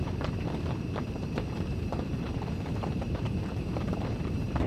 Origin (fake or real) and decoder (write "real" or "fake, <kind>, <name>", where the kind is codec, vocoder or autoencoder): fake, vocoder, BigVGAN v2